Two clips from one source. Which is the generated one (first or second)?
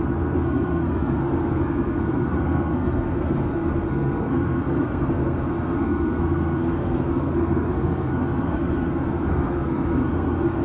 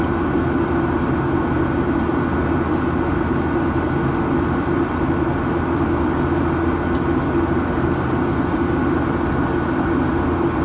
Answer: first